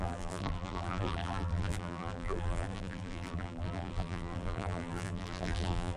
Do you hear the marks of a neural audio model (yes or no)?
yes